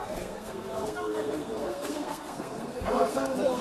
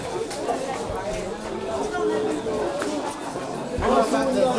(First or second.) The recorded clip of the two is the second